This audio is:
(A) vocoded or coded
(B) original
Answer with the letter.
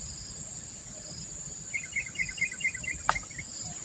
A